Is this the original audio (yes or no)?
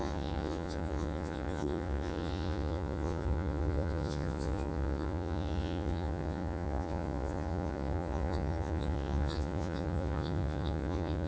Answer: no